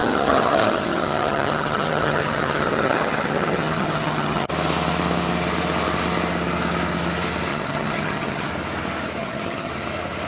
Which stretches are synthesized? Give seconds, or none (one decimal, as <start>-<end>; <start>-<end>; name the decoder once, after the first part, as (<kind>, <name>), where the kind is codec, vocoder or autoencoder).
0.0-4.5 (vocoder, HiFi-GAN); 7.5-8.5; 9.2-9.7